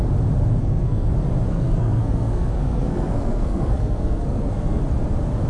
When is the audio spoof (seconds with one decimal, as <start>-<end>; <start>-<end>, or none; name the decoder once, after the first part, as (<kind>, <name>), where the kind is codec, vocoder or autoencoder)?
0.6-1.1 (codec, SNAC); 1.5-4.8